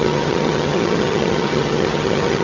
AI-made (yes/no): yes